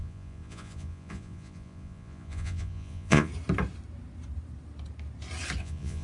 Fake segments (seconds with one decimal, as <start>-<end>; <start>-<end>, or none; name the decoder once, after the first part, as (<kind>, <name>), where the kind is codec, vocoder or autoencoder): 0.0-3.3 (vocoder, Vocos); 5.6-6.0